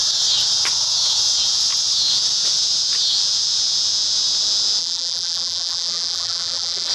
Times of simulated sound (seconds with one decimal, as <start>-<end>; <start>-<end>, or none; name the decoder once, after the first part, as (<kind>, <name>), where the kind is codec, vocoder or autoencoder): 4.8-6.9 (vocoder, BigVGAN v2)